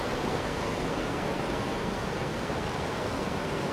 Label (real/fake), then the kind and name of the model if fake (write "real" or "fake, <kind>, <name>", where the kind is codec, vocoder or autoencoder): fake, codec, SNAC